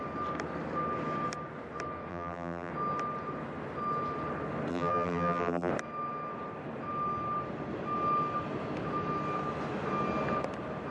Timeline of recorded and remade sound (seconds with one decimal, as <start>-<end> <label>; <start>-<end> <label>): 0.0-2.1 recorded; 2.1-2.7 remade; 2.7-4.7 recorded; 4.7-5.7 remade; 5.7-10.9 recorded